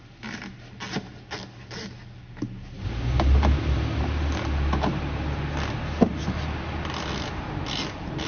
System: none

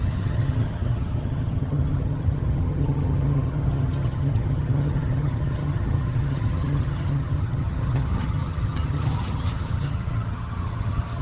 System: vocoder, HiFi-GAN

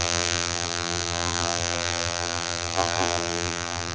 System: vocoder, BigVGAN v2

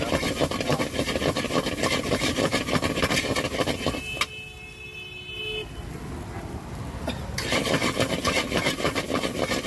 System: none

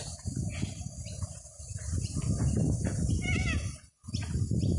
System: none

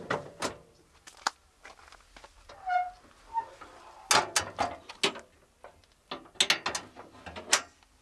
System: none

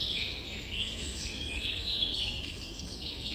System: codec, SNAC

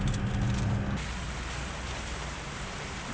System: none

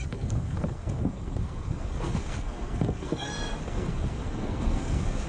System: codec, SNAC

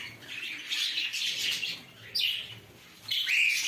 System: none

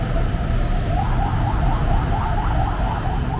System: none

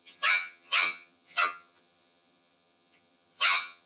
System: vocoder, HiFi-GAN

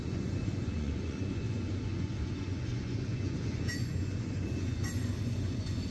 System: vocoder, Vocos